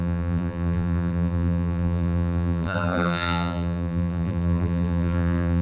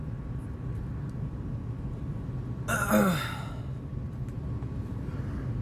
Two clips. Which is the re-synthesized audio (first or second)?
first